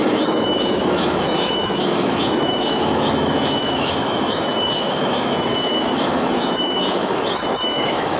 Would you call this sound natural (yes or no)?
no